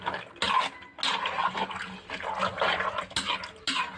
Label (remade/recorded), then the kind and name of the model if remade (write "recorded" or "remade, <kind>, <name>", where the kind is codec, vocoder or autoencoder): recorded